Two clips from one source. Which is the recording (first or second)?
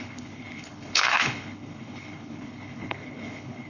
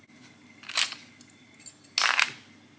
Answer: second